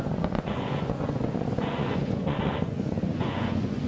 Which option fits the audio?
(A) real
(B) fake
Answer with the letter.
B